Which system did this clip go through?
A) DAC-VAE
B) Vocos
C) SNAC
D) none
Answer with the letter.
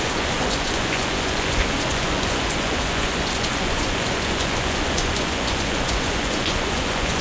B